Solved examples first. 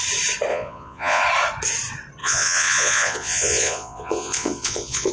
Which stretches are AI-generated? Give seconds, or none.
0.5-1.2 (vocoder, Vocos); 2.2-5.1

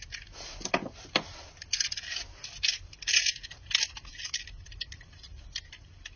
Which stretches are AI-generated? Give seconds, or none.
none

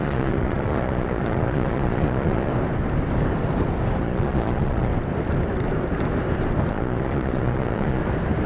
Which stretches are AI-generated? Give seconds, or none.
0.0-2.5 (vocoder, Vocos); 4.0-4.9; 6.7-8.0

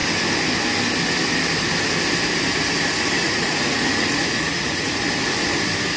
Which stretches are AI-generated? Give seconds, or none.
3.2-5.0 (vocoder, Vocos)

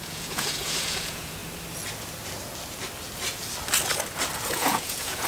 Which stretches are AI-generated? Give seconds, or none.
0.0-1.4 (vocoder, Vocos); 4.5-5.3

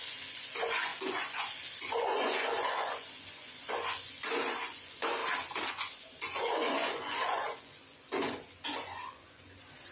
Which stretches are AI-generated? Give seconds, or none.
0.0-5.2 (vocoder, Vocos); 5.7-9.9

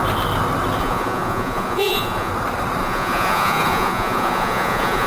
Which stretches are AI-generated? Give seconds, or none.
0.8-2.3 (vocoder, Vocos); 2.8-5.1